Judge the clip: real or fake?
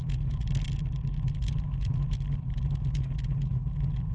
real